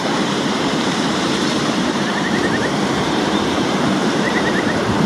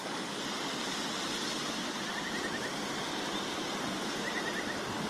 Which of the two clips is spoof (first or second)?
first